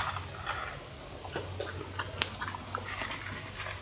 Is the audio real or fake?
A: real